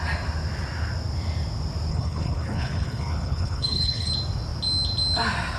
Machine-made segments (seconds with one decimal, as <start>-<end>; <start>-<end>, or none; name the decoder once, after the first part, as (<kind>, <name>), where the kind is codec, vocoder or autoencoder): 1.9-4.1 (codec, HILCodec)